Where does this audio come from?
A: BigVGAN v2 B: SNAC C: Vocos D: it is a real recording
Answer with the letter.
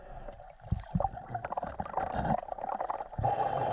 D